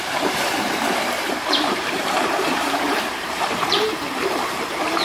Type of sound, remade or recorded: remade